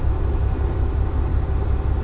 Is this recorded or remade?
recorded